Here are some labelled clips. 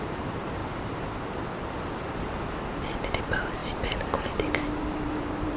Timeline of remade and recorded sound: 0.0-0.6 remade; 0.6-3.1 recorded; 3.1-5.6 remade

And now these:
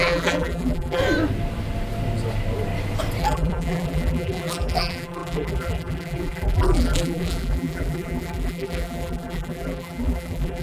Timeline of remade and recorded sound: 0.0-1.0 remade; 1.0-3.2 recorded; 3.2-10.6 remade

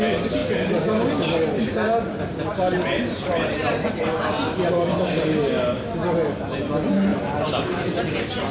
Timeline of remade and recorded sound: 0.0-2.5 recorded; 2.5-3.9 remade; 3.9-7.1 recorded; 7.1-8.0 remade; 8.0-8.5 recorded